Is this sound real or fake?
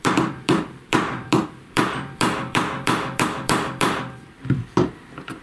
fake